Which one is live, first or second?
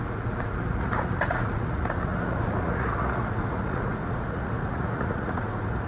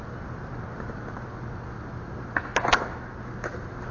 second